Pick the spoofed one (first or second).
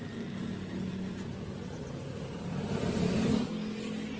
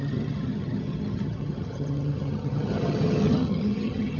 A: second